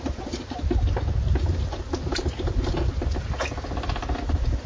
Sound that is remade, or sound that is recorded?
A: recorded